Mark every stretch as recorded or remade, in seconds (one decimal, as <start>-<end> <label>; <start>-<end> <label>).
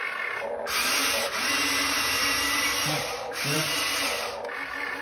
0.0-1.0 recorded; 1.0-4.0 remade; 4.0-5.0 recorded